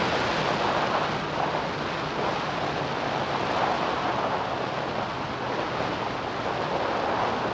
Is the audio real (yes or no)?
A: yes